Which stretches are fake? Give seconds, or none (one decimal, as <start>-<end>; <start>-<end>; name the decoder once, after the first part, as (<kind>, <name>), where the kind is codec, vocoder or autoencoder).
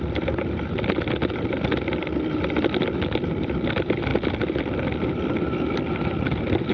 none